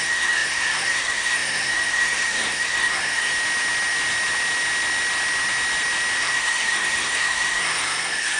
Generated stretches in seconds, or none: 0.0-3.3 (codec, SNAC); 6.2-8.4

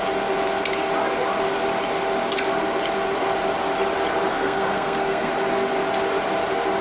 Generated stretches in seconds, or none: 4.3-5.3 (codec, SNAC)

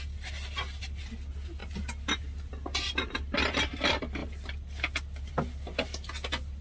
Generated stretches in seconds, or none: none

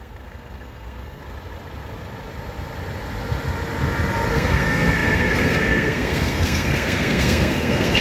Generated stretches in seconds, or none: 0.0-1.2 (codec, SNAC); 4.3-8.0

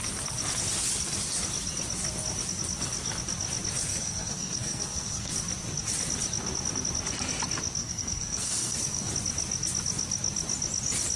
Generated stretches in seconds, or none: 3.9-5.3 (codec, SNAC); 7.8-9.1

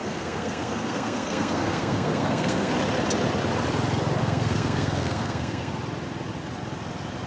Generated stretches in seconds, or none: 0.0-2.7 (codec, SNAC); 4.2-5.7

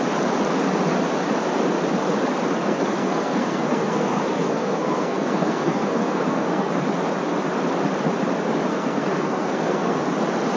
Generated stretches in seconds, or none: 2.6-6.7 (codec, SNAC); 8.7-10.0